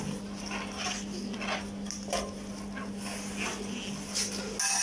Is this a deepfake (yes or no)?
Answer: no